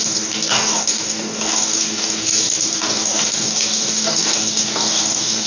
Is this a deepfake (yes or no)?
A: yes